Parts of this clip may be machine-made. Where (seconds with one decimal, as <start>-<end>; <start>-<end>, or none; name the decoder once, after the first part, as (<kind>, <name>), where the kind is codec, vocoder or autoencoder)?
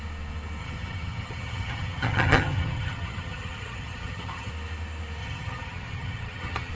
0.6-4.5 (vocoder, HiFi-GAN); 5.2-6.7